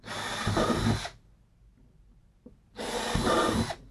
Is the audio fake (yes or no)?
no